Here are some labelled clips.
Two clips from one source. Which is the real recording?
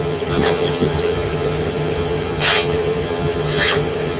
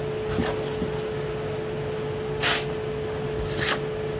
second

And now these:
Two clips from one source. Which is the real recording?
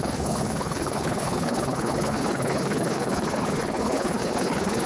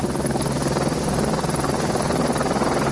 second